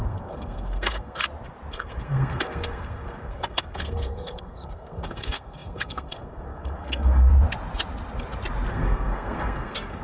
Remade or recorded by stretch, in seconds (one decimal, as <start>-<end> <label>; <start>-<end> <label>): 0.0-1.2 remade; 1.2-1.7 recorded; 1.7-7.3 remade; 7.3-8.7 recorded; 8.7-10.0 remade